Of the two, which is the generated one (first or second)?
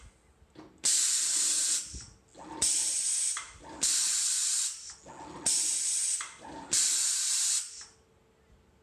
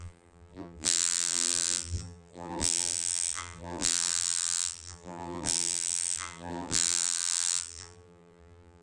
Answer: second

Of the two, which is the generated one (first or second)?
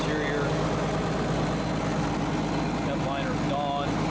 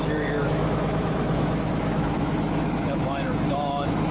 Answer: second